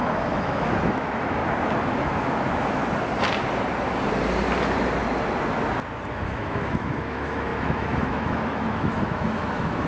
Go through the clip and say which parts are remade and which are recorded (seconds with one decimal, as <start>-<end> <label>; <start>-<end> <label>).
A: 0.0-1.4 remade; 1.4-1.9 recorded; 1.9-2.8 remade; 2.8-6.1 recorded; 6.1-9.9 remade